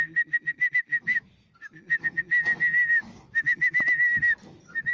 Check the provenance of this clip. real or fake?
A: real